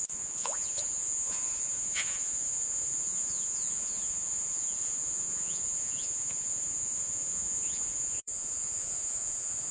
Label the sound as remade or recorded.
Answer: remade